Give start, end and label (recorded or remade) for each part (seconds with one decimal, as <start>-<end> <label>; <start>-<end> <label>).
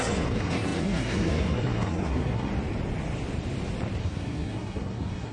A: 0.0-2.5 remade; 2.5-4.0 recorded; 4.0-5.3 remade